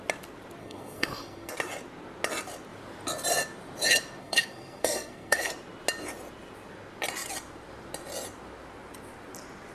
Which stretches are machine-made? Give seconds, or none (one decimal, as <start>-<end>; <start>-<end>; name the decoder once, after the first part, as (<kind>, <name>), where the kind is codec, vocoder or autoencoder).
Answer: 0.6-1.5 (codec, SNAC); 4.2-5.5